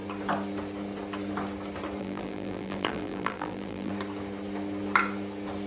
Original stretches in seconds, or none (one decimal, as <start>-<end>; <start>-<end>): 0.0-2.0; 3.9-5.7